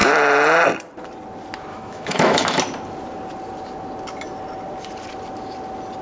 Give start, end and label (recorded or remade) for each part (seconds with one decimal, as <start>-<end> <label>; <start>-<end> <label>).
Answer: 0.0-1.7 recorded; 1.7-2.6 remade; 2.6-6.0 recorded

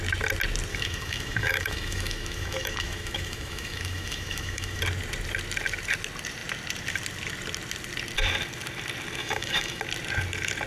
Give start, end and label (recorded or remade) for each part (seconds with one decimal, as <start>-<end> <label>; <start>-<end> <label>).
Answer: 0.0-0.7 recorded; 0.7-4.8 remade; 4.8-9.2 recorded; 9.2-9.8 remade; 9.8-10.7 recorded

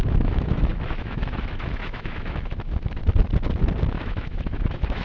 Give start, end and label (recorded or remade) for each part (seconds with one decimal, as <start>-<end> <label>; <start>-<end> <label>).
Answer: 0.0-3.0 remade; 3.0-3.9 recorded; 3.9-5.0 remade

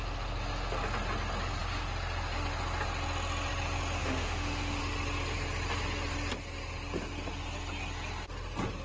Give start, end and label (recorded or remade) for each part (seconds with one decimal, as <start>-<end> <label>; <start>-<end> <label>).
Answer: 0.0-4.0 recorded; 4.0-4.8 remade; 4.8-8.8 recorded

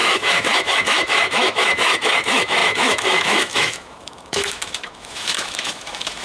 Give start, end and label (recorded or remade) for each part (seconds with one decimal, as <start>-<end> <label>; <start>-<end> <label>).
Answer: 0.0-6.2 remade

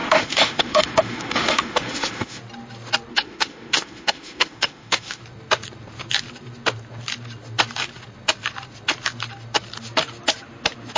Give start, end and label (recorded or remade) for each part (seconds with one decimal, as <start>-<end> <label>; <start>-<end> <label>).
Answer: 0.0-2.4 remade; 2.4-3.1 recorded; 3.1-5.2 remade; 5.2-11.0 recorded

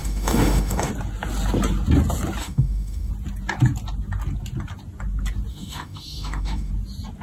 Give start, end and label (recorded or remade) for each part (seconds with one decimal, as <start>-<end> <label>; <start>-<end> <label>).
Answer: 0.0-0.9 remade; 0.9-2.4 recorded; 2.4-3.1 remade; 3.1-5.5 recorded; 5.5-6.7 remade; 6.7-7.2 recorded